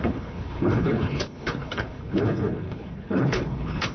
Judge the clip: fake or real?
fake